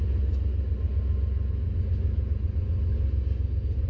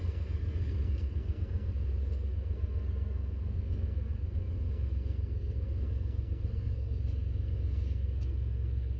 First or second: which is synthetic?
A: second